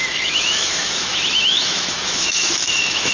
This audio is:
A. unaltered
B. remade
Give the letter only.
B